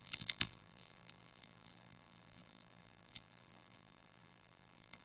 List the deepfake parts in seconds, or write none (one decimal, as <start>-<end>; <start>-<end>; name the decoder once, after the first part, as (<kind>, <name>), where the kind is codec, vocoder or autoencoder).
0.0-5.0 (vocoder, BigVGAN v2)